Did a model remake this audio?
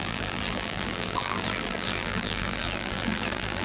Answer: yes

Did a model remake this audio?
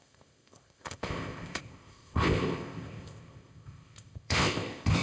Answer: yes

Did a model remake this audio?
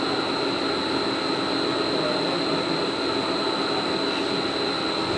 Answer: no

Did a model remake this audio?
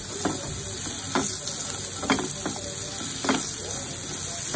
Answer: no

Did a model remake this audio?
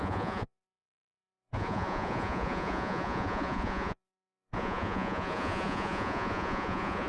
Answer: yes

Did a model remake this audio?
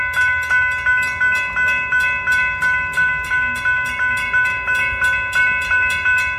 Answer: no